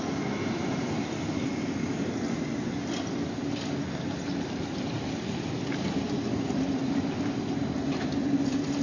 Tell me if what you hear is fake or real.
real